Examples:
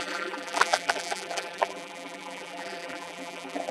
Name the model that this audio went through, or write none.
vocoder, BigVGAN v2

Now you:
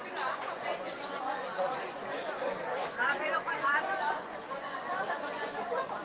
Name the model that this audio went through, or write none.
vocoder, Vocos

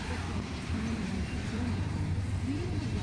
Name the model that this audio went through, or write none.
vocoder, BigVGAN v2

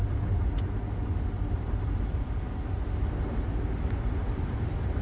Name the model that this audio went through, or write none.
none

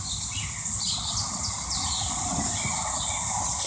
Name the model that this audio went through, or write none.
none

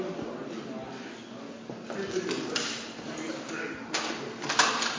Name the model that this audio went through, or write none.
none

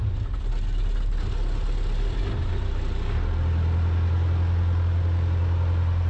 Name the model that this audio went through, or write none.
none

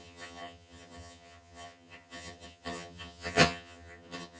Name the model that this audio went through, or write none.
vocoder, HiFi-GAN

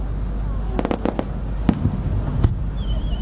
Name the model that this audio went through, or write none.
none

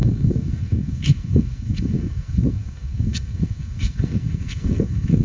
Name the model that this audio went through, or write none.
codec, SNAC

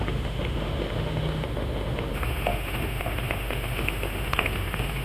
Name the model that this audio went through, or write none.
autoencoder, DAC-VAE